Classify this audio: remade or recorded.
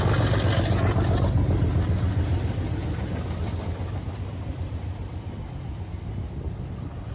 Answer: recorded